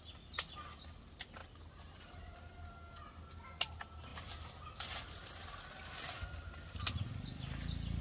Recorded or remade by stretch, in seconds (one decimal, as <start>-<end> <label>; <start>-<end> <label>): 0.0-4.1 recorded; 4.1-5.2 remade; 5.2-8.0 recorded

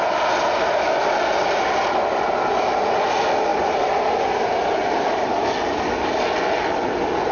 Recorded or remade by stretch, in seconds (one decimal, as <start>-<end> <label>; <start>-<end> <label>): 0.0-3.5 recorded; 3.5-5.3 remade; 5.3-7.3 recorded

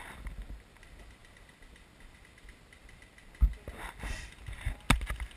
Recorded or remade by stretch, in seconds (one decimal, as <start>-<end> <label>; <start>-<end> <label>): 0.0-5.4 recorded

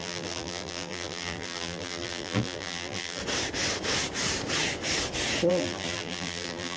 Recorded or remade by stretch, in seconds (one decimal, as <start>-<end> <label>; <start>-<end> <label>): 0.0-3.2 remade; 3.2-5.5 recorded; 5.5-6.8 remade